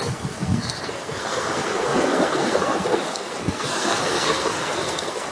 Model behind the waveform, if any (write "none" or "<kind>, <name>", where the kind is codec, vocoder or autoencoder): codec, SNAC